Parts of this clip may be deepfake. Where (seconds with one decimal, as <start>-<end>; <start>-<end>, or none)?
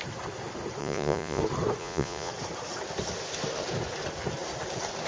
0.8-1.4; 1.8-2.3